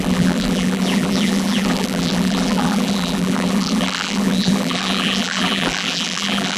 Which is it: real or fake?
fake